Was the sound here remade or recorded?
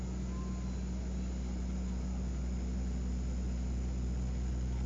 recorded